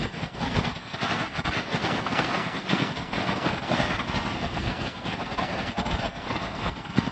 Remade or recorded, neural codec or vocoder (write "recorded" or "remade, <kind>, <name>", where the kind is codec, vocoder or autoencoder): remade, codec, SNAC